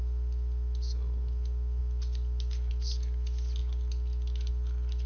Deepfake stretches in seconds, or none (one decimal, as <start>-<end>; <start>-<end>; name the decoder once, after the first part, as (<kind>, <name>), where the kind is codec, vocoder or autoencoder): none